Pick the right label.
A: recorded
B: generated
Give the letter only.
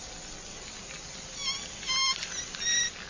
A